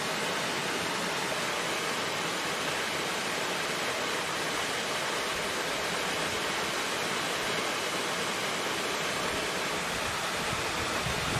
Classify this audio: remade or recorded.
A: recorded